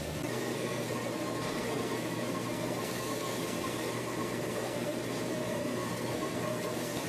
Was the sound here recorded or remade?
remade